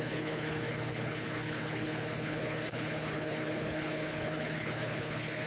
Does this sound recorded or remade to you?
remade